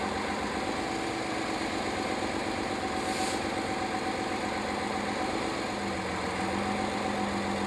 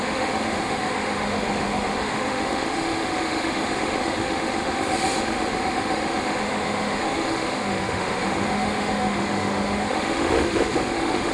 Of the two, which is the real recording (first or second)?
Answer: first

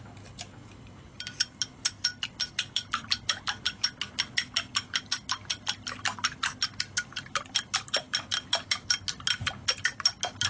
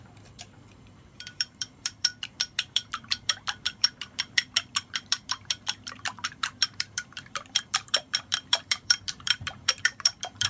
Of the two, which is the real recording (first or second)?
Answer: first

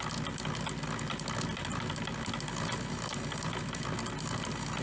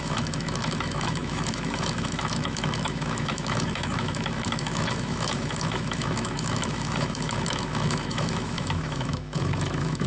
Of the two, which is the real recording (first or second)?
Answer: first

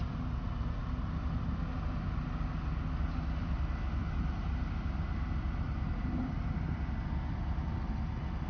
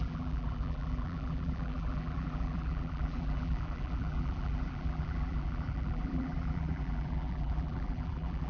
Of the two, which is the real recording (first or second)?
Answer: first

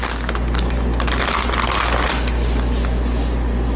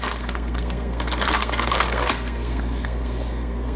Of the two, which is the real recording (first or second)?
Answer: first